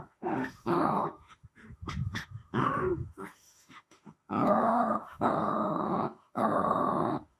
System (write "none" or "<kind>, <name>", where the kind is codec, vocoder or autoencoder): autoencoder, DAC-VAE